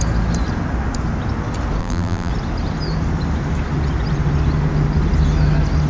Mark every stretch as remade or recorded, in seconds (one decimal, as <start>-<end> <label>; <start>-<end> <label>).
0.0-1.8 recorded; 1.8-2.3 remade; 2.3-5.9 recorded